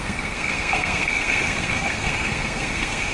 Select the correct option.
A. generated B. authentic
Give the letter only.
A